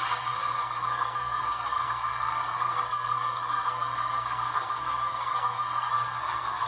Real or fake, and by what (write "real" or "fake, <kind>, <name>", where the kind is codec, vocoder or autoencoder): fake, codec, SNAC